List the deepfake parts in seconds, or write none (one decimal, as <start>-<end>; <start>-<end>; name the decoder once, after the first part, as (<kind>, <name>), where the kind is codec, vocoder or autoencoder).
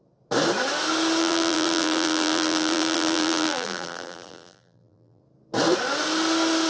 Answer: 1.2-5.2 (vocoder, BigVGAN v2)